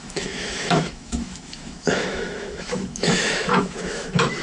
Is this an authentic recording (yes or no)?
no